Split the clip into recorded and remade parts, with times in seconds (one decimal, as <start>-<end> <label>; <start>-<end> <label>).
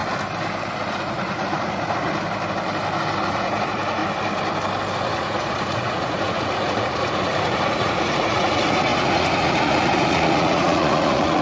0.0-0.9 recorded; 0.9-2.1 remade; 2.1-3.2 recorded; 3.2-4.0 remade; 4.0-5.1 recorded; 5.1-11.4 remade